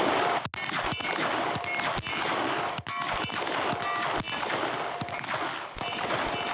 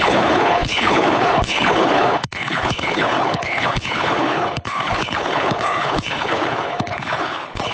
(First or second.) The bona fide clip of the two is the first